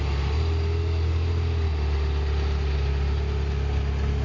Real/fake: real